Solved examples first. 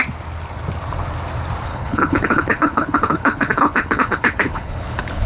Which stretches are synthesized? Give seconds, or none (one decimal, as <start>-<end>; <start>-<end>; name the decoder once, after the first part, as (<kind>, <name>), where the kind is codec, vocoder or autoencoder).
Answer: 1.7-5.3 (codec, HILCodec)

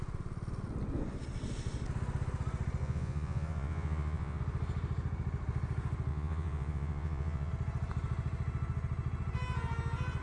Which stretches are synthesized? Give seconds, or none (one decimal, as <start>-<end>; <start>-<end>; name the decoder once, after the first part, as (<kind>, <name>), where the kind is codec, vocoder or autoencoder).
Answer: 2.8-4.4 (vocoder, Vocos); 6.1-7.5

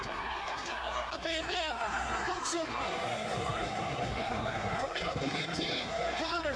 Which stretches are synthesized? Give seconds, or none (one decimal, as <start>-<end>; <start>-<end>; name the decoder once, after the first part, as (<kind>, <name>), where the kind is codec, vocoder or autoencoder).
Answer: 0.0-6.6 (codec, SNAC)

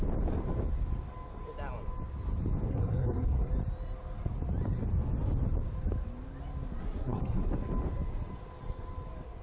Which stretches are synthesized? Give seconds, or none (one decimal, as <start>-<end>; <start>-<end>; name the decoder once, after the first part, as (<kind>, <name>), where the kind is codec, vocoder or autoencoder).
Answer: 2.7-3.5 (codec, SNAC); 6.8-7.4

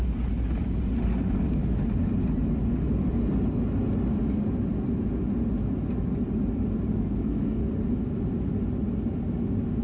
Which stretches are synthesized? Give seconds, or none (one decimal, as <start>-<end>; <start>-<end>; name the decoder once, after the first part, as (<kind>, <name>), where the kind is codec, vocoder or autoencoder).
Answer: 6.9-7.6 (codec, SNAC)

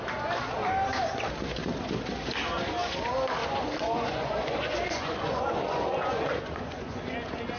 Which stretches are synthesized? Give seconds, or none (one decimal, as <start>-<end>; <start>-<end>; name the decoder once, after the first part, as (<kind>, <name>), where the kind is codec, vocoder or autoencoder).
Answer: 3.4-7.0 (vocoder, Vocos)

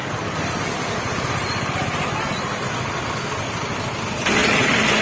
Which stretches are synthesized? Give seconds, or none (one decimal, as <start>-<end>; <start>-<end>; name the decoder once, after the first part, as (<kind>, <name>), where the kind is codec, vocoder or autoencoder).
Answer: none

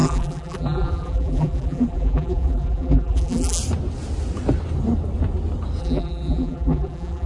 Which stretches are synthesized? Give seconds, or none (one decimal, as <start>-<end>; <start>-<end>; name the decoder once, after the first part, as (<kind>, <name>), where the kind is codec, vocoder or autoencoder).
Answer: 0.0-3.6 (vocoder, BigVGAN v2); 5.8-7.3